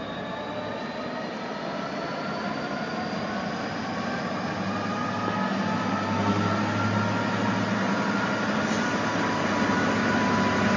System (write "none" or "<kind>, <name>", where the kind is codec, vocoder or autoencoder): none